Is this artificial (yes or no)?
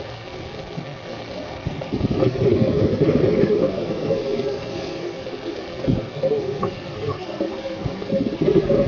yes